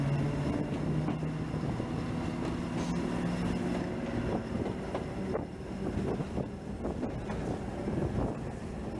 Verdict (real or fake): real